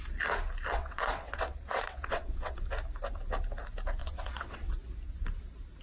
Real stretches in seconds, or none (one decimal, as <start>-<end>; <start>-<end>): 0.0-0.7; 2.6-4.0; 4.7-5.8